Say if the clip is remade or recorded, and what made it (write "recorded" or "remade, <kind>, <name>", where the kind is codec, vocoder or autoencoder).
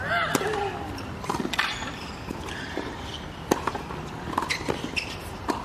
recorded